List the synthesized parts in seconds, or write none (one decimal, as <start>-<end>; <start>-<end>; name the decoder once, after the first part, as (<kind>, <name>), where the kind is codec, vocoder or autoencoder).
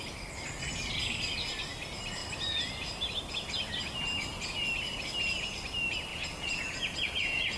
6.1-7.6 (vocoder, Vocos)